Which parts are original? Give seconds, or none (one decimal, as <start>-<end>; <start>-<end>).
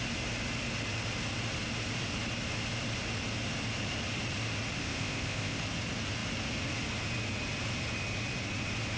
0.0-4.8; 5.6-9.0